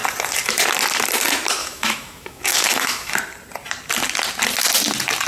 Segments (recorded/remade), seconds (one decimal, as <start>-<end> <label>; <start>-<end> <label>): 0.0-1.6 recorded; 1.6-3.1 remade; 3.1-5.3 recorded